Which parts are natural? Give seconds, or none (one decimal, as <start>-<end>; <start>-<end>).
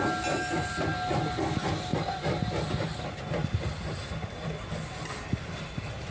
0.0-6.1